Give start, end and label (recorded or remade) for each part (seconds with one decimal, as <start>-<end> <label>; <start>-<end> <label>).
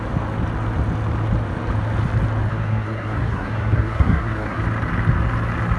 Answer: 0.0-2.5 recorded; 2.5-4.6 remade; 4.6-5.8 recorded